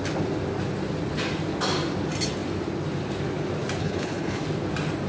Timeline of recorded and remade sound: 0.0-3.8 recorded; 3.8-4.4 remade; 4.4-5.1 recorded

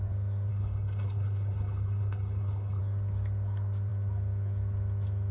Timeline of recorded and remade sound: 0.0-0.5 recorded; 0.5-2.8 remade; 2.8-5.3 recorded

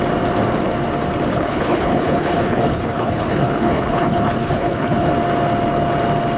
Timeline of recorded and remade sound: 0.0-1.3 recorded; 1.3-5.1 remade; 5.1-6.4 recorded

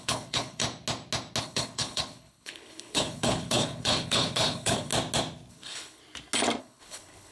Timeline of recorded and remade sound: 0.0-0.6 remade; 0.6-1.4 recorded; 1.4-4.9 remade; 4.9-5.5 recorded; 5.5-6.0 remade; 6.0-6.6 recorded; 6.6-7.3 remade

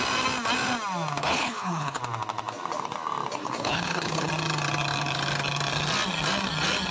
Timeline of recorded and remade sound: 0.0-1.2 recorded; 1.2-2.0 remade; 2.0-3.4 recorded; 3.4-4.3 remade; 4.3-6.9 recorded

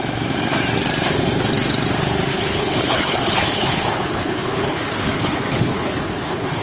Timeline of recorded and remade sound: 0.0-2.3 recorded; 2.3-6.6 remade

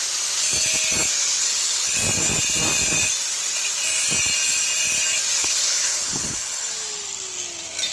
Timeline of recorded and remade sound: 0.0-1.4 recorded; 1.4-2.0 remade; 2.0-5.4 recorded; 5.4-6.7 remade; 6.7-7.9 recorded

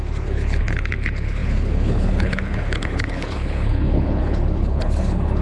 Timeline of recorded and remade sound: 0.0-5.4 remade